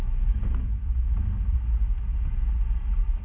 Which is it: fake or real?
real